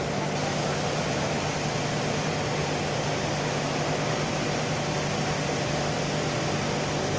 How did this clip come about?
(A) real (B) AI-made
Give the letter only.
A